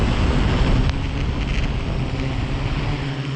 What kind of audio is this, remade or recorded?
recorded